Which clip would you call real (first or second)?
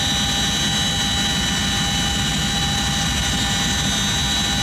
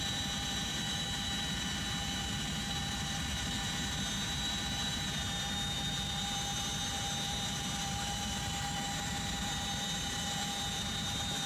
first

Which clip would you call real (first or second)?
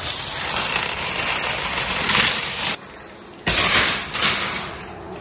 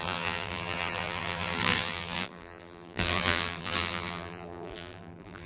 first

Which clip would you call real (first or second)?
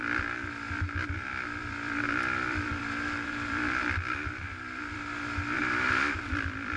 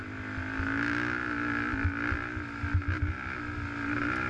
second